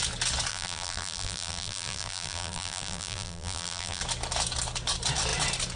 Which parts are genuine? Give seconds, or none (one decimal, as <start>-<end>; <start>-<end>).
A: 0.0-0.5; 4.0-5.8